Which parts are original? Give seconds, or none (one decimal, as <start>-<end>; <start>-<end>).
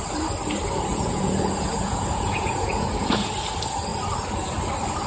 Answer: 0.0-0.9; 3.3-5.1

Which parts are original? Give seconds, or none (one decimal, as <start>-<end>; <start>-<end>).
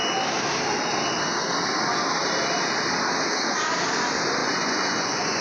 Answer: 0.0-4.4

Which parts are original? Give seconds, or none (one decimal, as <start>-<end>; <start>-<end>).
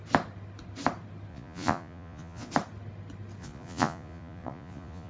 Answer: 0.0-1.3; 2.5-3.4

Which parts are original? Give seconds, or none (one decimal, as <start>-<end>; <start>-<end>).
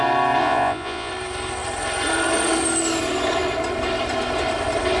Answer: 0.0-0.4; 1.1-5.0